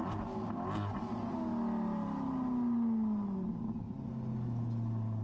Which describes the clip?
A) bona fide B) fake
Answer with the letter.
A